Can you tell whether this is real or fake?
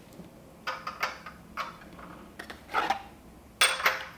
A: real